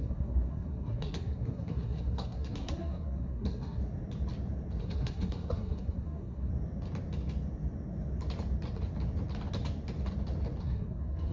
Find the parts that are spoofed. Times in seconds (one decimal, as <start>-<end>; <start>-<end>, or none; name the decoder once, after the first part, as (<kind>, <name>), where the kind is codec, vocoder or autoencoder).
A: 0.0-3.8 (codec, SNAC); 4.8-6.5; 10.6-11.3

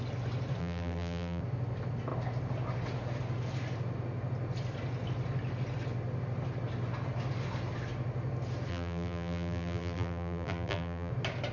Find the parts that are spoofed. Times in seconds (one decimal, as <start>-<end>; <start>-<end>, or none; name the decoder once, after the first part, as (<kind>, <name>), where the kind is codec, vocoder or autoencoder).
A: 0.6-1.4 (vocoder, BigVGAN v2); 8.7-11.1

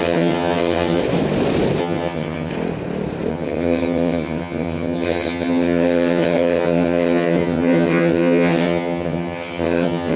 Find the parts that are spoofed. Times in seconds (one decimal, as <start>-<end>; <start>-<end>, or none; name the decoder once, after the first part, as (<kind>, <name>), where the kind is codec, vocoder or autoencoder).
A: 0.0-1.0 (vocoder, HiFi-GAN); 1.8-2.5; 3.3-10.2

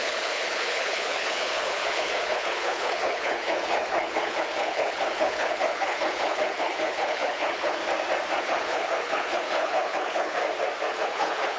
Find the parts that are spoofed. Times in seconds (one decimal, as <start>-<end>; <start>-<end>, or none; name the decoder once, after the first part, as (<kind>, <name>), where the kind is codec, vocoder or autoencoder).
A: 0.0-7.8 (codec, HILCodec); 8.4-10.4; 10.9-11.6

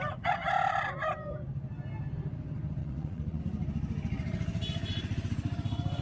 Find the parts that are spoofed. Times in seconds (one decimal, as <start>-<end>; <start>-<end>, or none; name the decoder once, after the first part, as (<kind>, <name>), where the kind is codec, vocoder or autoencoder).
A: 2.8-3.4 (vocoder, Vocos)

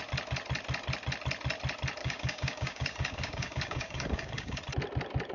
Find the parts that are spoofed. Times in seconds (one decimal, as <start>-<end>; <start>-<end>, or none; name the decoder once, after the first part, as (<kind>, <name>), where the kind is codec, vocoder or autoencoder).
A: 2.0-4.6 (codec, DAC)

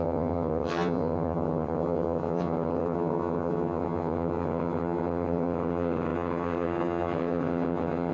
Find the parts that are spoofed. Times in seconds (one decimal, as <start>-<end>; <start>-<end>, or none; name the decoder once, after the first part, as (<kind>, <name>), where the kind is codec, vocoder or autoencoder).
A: 0.0-8.1 (vocoder, HiFi-GAN)